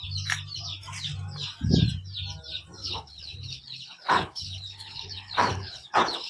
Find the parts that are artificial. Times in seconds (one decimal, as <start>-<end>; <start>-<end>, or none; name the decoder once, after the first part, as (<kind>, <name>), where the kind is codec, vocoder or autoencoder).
2.8-6.3 (codec, HILCodec)